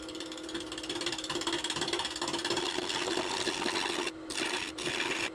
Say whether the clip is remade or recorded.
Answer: recorded